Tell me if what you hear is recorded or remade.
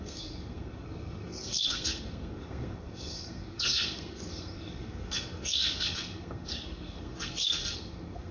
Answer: remade